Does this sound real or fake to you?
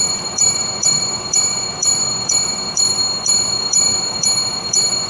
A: fake